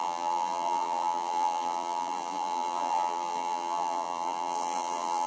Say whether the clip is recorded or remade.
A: remade